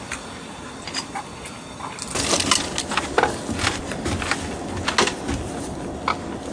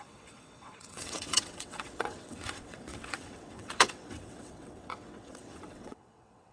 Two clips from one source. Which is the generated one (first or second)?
second